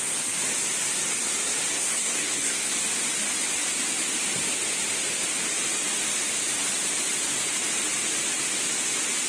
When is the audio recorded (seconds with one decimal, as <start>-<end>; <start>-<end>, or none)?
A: 0.0-1.7; 2.7-9.3